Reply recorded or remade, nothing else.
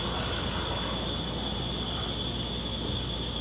recorded